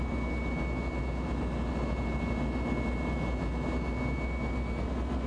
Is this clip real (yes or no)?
yes